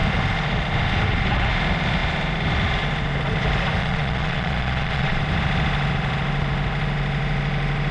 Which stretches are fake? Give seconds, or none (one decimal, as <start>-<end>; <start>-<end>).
3.8-5.2